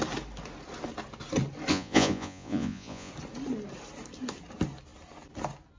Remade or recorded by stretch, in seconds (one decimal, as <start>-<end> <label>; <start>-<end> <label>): 0.0-1.7 recorded; 1.7-3.1 remade; 3.1-5.8 recorded